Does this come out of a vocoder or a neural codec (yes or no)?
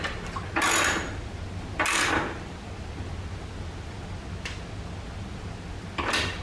no